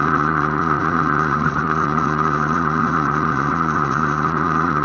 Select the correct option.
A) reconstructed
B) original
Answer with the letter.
A